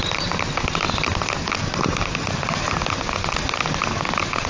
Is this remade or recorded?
recorded